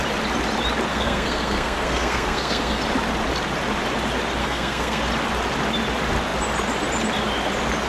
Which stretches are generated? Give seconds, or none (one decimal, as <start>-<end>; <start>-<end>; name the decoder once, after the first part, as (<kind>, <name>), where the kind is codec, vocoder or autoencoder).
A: 0.9-2.8 (codec, SNAC); 4.4-5.0